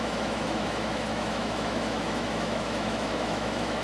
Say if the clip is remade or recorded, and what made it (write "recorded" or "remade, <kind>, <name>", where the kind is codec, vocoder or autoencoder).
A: remade, autoencoder, DAC-VAE